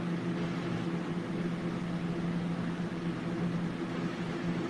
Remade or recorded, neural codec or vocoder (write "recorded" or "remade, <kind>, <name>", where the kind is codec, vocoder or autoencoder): recorded